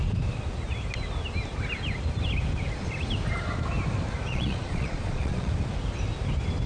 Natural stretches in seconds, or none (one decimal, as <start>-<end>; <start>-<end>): 0.0-4.3; 5.5-6.7

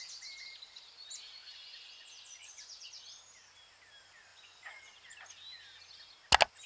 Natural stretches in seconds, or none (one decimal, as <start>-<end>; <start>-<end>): 0.0-1.4; 3.0-4.3; 4.8-6.7